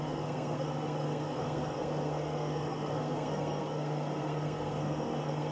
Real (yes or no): no